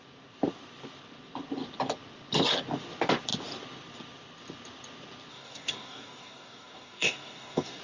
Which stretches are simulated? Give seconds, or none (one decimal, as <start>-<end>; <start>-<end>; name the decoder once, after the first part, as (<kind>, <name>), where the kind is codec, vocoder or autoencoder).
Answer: 5.3-7.8 (codec, DAC)